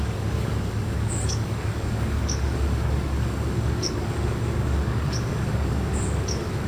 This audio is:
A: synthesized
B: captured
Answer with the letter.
A